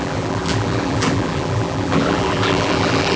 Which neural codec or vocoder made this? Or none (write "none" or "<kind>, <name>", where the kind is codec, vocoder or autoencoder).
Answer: vocoder, BigVGAN v2